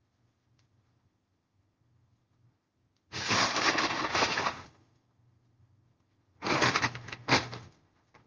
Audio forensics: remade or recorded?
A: remade